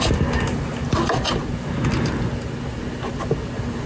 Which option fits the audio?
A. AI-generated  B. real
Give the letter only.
B